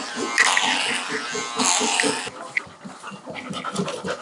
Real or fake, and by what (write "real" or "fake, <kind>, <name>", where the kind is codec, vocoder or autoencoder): real